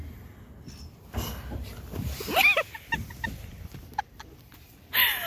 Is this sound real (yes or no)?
yes